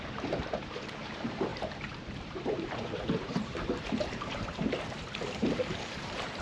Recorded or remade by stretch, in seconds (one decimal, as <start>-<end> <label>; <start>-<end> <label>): 0.0-6.4 remade